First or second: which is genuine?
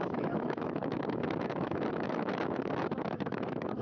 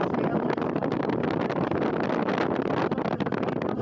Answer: second